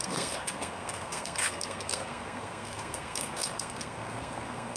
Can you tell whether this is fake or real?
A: fake